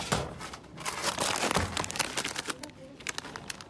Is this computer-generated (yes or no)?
no